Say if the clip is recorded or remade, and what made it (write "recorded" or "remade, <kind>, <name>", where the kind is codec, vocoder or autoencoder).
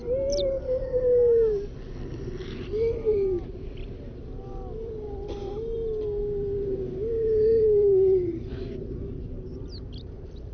recorded